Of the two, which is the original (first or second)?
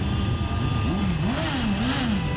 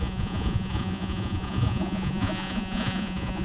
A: first